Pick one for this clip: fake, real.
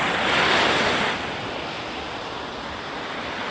real